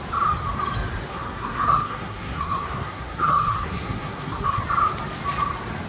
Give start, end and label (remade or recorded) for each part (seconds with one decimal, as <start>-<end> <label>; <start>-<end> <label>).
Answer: 0.0-1.1 recorded; 1.1-4.6 remade; 4.6-5.9 recorded